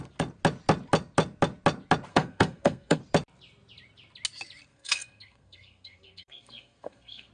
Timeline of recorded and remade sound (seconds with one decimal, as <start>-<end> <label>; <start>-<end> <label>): 0.0-2.1 recorded; 2.1-3.0 remade; 3.0-4.7 recorded; 4.7-7.3 remade